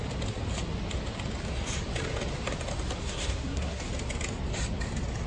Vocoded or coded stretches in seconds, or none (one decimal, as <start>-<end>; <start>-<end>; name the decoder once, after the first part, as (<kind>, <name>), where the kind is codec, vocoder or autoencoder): 3.0-3.9 (codec, SNAC)